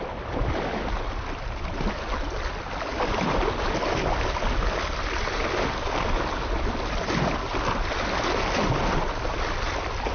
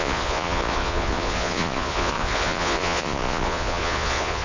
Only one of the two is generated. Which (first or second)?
second